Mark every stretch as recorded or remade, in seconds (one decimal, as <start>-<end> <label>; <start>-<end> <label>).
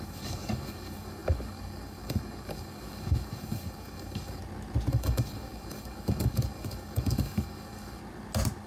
0.0-4.4 remade; 4.4-4.9 recorded; 4.9-8.0 remade; 8.0-8.7 recorded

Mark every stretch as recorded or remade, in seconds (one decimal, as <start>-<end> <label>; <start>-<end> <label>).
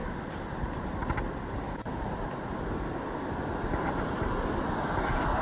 0.0-5.4 recorded